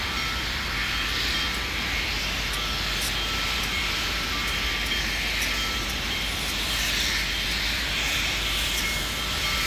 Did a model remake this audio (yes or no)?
no